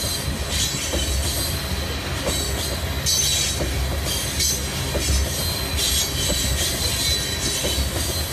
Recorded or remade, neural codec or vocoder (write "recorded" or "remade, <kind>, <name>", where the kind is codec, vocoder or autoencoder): recorded